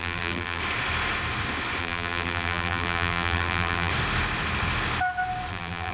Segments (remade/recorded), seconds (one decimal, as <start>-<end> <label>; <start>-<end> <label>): 0.0-0.6 remade; 0.6-1.8 recorded; 1.8-3.9 remade; 3.9-5.5 recorded; 5.5-5.9 remade